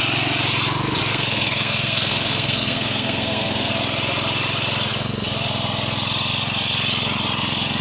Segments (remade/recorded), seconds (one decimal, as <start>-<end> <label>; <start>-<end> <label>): 0.0-1.1 recorded; 1.1-3.7 remade; 3.7-7.8 recorded